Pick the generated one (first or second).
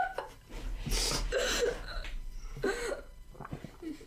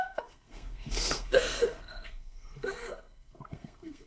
second